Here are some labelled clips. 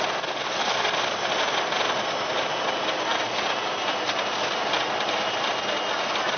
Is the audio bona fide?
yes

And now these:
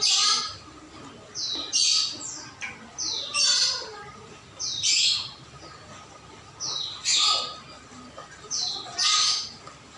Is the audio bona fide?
yes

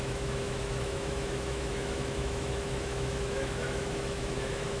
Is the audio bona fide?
no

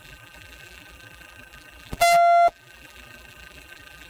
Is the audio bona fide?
no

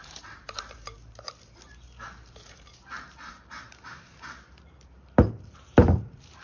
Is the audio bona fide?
no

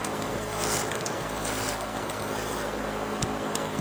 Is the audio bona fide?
no